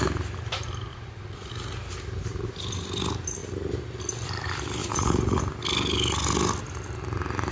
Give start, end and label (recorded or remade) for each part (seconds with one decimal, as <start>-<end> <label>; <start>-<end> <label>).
0.0-0.9 recorded; 0.9-1.5 remade; 1.5-4.8 recorded; 4.8-5.4 remade; 5.4-7.5 recorded